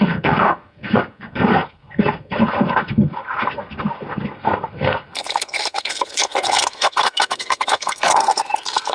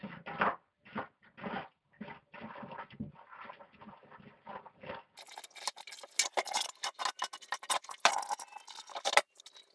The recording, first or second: second